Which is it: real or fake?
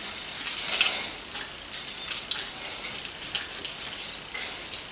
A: real